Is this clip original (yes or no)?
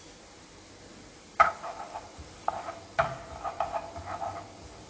yes